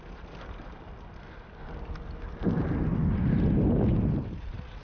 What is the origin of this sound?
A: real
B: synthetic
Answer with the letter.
A